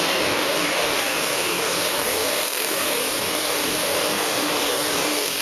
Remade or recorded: remade